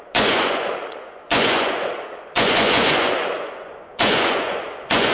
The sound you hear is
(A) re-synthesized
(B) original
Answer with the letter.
A